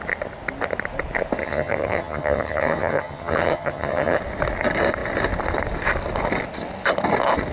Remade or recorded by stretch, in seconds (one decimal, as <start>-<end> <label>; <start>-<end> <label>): 0.0-1.4 recorded; 1.4-4.2 remade; 4.2-7.5 recorded